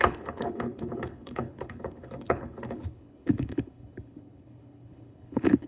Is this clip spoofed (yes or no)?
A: yes